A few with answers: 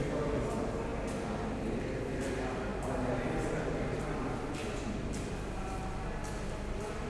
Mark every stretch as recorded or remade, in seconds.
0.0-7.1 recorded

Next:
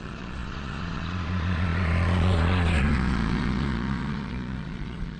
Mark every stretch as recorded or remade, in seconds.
0.0-5.2 remade

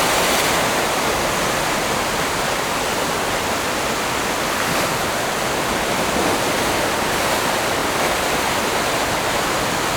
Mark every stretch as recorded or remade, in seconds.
0.0-10.0 recorded

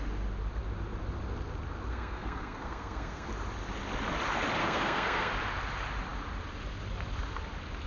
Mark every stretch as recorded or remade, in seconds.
0.0-1.9 recorded; 1.9-3.3 remade; 3.3-4.6 recorded; 4.6-5.3 remade; 5.3-7.9 recorded

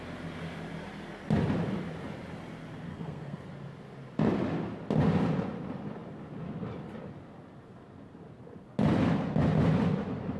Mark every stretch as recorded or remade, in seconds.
0.0-2.9 recorded; 2.9-3.4 remade; 3.4-10.4 recorded